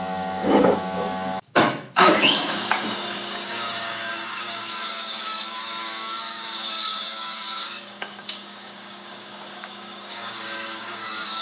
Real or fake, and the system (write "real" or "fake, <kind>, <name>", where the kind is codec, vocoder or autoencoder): fake, codec, DAC